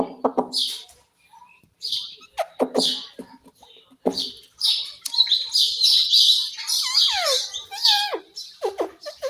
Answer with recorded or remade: remade